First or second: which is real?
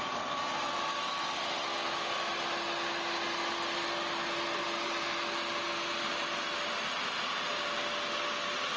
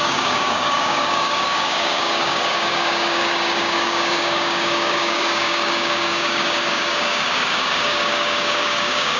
first